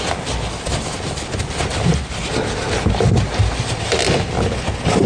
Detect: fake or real real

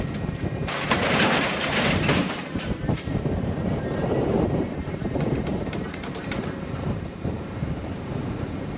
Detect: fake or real fake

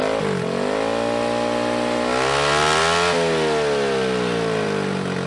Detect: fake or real real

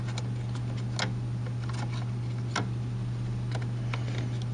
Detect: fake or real real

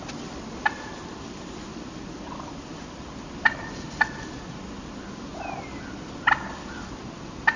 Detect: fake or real fake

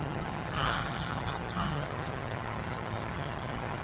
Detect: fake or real fake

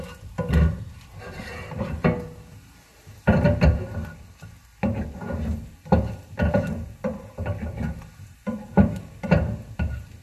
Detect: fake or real real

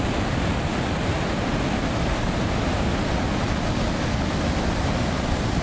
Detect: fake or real real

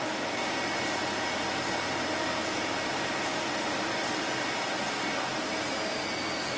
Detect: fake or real real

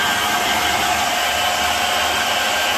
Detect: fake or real real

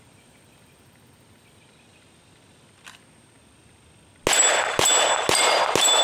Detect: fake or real real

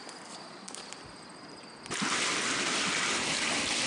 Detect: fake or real real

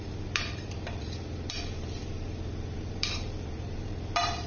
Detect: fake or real fake